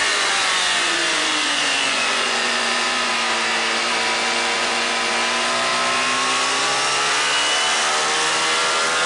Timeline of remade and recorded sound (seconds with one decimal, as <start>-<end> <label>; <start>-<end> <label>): 0.0-3.1 remade; 3.1-4.2 recorded; 4.2-5.1 remade; 5.1-9.1 recorded